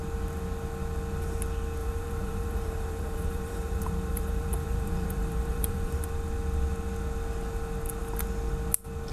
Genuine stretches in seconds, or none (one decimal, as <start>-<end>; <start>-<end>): 0.0-1.8; 6.0-9.1